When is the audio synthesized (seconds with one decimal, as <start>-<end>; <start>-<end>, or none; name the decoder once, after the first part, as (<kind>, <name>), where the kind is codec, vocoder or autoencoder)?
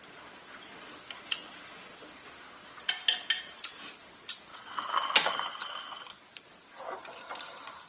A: none